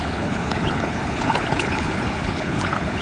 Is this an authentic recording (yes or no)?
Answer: no